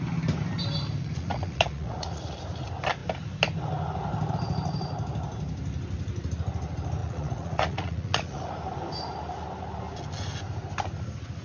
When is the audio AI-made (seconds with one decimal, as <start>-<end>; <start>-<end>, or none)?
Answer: 1.0-2.4; 7.0-8.5